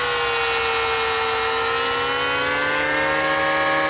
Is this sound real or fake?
real